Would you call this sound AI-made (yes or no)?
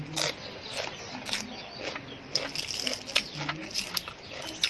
no